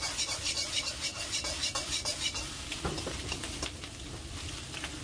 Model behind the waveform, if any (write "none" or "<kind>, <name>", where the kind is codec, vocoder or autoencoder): none